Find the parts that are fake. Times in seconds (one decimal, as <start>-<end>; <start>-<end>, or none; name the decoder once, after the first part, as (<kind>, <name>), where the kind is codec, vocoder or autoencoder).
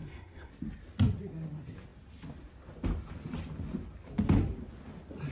0.0-0.5 (codec, SNAC)